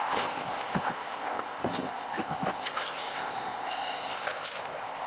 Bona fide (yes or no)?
no